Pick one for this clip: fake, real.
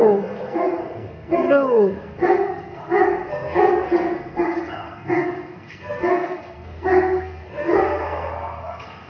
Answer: fake